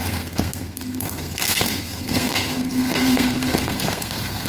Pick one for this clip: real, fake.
fake